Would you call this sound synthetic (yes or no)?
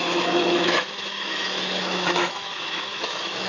yes